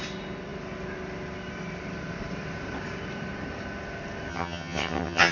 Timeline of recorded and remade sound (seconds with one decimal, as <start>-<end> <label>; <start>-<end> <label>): 0.0-4.3 recorded; 4.3-5.3 remade